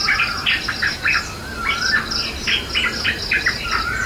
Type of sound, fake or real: real